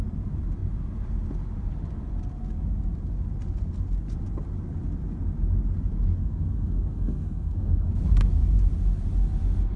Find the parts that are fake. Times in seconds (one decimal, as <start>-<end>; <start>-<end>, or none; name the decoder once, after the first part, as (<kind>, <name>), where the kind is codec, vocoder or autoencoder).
6.2-7.9 (codec, SNAC)

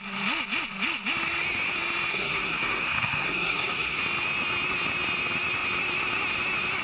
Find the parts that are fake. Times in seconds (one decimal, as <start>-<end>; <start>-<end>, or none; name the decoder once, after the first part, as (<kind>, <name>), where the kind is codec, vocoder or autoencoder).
2.1-4.0 (codec, SNAC)

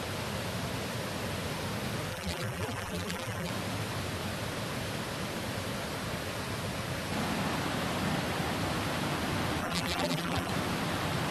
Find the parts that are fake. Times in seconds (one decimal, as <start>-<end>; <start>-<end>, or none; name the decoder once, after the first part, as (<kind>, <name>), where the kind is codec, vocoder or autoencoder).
2.1-3.5 (vocoder, BigVGAN v2); 9.6-10.5

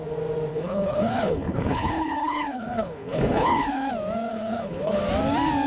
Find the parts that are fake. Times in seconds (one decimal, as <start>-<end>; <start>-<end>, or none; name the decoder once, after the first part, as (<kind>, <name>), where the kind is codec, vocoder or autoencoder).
0.5-3.9 (codec, HILCodec); 4.3-5.0